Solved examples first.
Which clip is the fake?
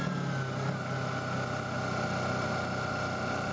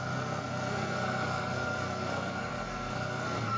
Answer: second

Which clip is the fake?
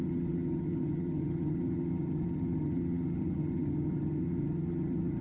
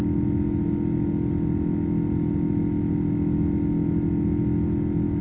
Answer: first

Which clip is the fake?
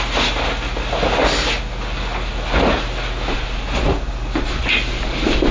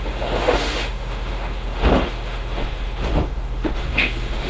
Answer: second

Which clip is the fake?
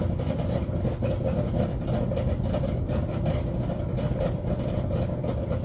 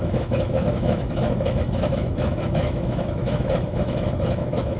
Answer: second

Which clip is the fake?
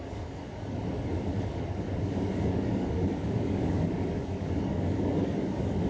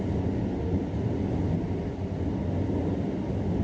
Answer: first